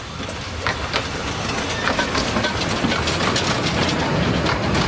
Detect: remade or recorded recorded